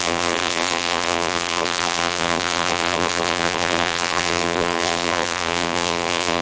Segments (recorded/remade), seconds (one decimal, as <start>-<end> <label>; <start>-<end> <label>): 0.0-6.4 remade